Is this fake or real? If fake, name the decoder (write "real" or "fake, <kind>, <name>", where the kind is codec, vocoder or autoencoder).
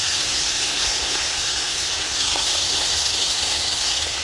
fake, codec, SNAC